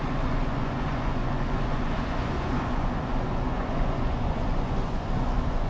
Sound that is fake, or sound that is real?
fake